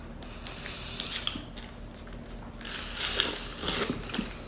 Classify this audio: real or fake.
real